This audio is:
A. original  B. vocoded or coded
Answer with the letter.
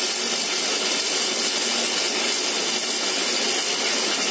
A